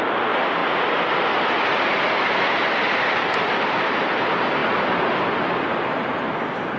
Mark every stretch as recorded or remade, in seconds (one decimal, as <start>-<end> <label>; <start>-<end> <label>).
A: 0.0-6.8 recorded